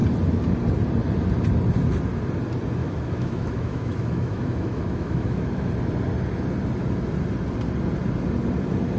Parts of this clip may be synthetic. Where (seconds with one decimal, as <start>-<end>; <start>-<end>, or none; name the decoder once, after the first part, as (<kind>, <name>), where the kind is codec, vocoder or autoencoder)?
2.8-5.7 (autoencoder, DAC-VAE)